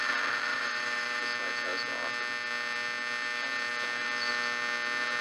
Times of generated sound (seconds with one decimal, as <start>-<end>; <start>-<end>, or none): 0.5-1.2